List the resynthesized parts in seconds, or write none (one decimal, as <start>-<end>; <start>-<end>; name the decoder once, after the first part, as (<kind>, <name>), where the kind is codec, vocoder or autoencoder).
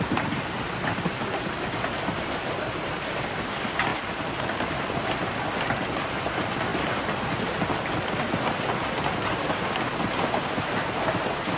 none